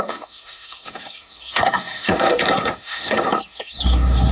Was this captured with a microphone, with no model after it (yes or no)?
no